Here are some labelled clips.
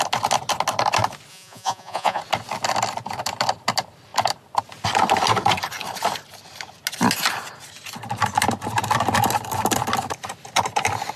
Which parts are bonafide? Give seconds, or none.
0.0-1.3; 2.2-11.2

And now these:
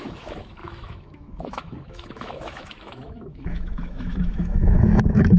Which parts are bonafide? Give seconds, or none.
none

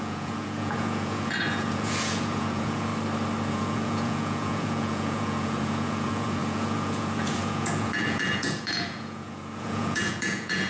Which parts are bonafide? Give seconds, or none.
2.9-3.5

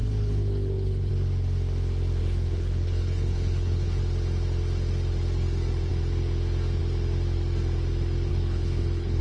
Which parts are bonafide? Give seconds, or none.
1.1-2.2; 4.0-8.3

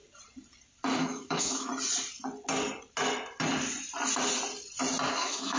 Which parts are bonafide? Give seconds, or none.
0.0-0.9; 1.7-5.1

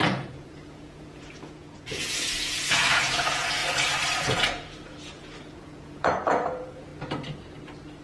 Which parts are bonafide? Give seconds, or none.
3.6-4.2; 6.9-8.0

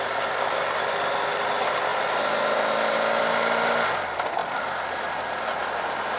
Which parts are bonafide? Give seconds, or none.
0.0-6.2